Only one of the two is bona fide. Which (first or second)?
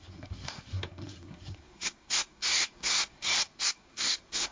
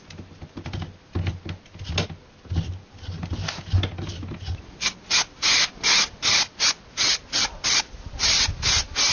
second